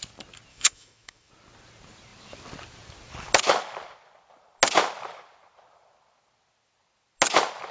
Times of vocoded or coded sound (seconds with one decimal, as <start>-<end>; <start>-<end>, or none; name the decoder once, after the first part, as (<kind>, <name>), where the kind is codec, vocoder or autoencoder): 0.5-1.3 (autoencoder, DAC-VAE)